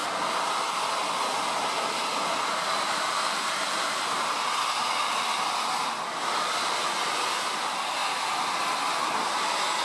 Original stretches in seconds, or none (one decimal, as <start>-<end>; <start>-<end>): 0.0-9.8